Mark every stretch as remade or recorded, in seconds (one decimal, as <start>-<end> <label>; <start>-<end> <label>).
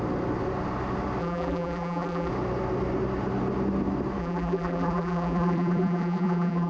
0.0-1.2 recorded; 1.2-2.3 remade; 2.3-4.2 recorded; 4.2-6.7 remade